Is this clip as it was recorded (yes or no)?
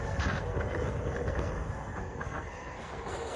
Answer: no